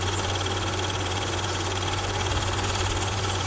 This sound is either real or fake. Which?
fake